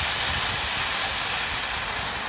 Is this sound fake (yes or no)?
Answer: no